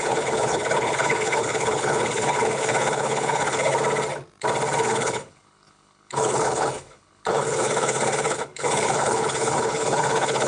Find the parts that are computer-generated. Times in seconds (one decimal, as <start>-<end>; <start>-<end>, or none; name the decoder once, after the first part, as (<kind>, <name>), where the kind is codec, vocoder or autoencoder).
0.0-3.7 (codec, HILCodec); 4.8-10.5